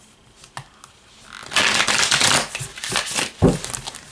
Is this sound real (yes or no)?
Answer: yes